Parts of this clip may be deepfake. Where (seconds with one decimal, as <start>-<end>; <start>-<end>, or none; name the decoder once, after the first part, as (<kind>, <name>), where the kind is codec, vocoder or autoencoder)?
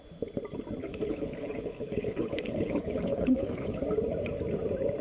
0.8-3.8 (codec, HILCodec)